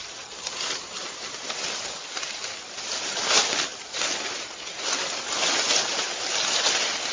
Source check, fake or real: real